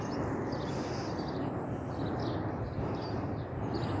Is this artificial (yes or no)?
no